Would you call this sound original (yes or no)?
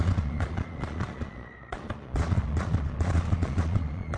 no